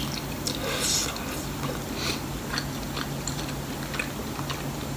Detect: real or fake real